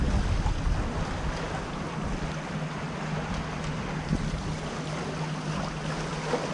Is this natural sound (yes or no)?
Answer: yes